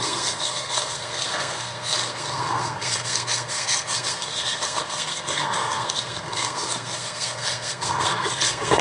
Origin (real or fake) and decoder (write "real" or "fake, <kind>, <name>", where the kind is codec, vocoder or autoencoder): fake, codec, SNAC